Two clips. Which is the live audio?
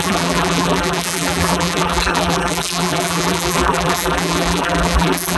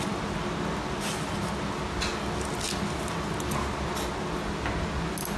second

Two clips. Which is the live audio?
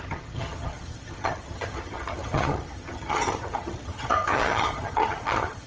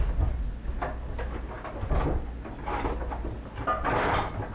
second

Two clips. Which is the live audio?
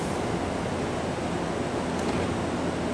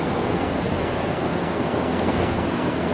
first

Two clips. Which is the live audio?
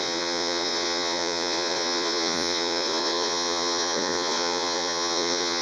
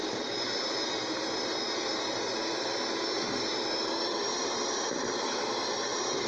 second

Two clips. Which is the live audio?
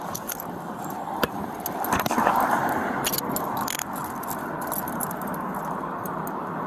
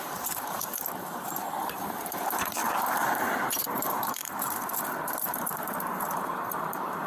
first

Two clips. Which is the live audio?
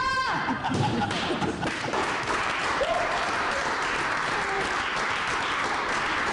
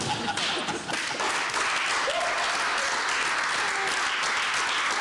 second